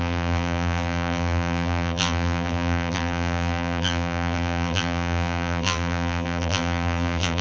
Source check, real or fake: fake